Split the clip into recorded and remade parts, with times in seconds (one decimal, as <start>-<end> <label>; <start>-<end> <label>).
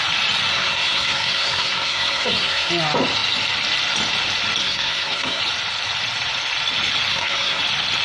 0.0-0.5 recorded; 0.5-2.7 remade; 2.7-4.6 recorded; 4.6-5.4 remade; 5.4-7.1 recorded; 7.1-7.6 remade; 7.6-8.0 recorded